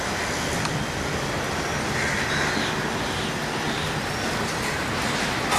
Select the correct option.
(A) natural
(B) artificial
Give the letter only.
A